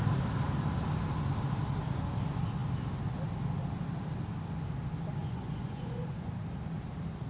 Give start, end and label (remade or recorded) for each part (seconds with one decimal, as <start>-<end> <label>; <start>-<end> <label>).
0.0-5.2 recorded; 5.2-6.3 remade; 6.3-7.3 recorded